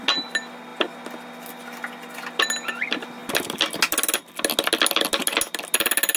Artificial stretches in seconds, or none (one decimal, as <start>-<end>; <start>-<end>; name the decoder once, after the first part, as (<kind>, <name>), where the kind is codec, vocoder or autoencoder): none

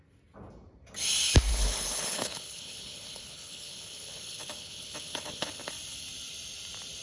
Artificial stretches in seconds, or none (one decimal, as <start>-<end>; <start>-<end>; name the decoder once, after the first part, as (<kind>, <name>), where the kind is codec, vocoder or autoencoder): 1.5-5.7 (codec, HILCodec)

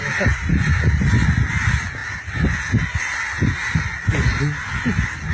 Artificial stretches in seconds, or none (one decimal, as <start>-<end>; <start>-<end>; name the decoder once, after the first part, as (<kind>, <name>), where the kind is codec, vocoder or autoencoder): none

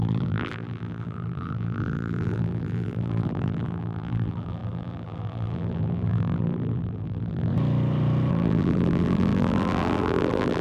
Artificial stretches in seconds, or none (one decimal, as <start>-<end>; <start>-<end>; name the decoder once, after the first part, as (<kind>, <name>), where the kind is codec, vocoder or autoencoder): 0.0-7.5 (vocoder, BigVGAN v2); 8.3-10.6

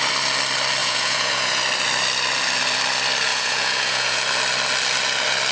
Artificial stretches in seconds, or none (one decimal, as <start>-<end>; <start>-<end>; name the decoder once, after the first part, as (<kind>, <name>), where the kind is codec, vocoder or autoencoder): 0.8-1.6 (vocoder, Vocos); 3.3-4.2